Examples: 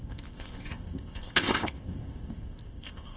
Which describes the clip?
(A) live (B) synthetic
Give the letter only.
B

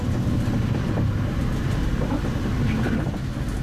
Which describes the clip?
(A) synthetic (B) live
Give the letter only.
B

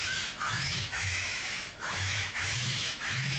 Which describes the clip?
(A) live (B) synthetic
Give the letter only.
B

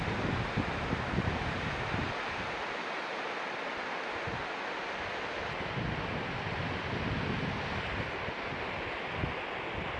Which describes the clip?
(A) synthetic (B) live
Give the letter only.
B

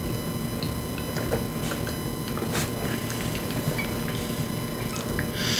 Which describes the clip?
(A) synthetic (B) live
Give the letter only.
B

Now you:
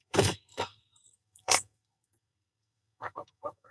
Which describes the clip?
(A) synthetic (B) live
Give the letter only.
A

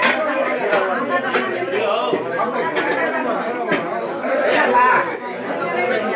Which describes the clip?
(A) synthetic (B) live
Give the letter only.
B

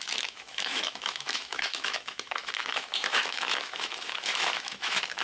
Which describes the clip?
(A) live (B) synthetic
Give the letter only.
B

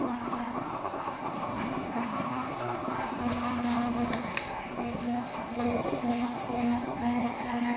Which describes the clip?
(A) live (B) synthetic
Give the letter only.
B